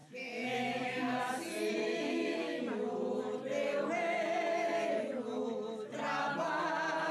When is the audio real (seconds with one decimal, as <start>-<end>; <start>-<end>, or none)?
0.8-1.8; 2.6-7.1